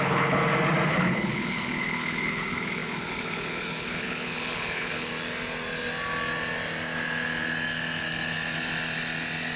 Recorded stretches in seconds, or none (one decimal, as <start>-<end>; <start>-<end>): 0.4-0.9; 5.1-9.6